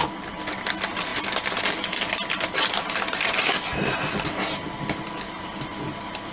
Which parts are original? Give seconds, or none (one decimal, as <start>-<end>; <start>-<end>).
0.0-6.3